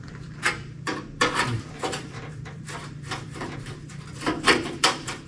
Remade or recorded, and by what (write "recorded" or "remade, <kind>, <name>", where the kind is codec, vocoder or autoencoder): remade, vocoder, BigVGAN v2